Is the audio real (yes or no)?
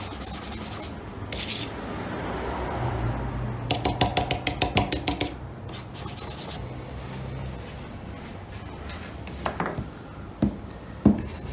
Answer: yes